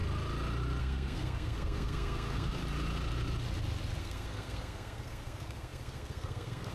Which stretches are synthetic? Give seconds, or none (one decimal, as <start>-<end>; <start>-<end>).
0.8-2.6; 4.0-6.7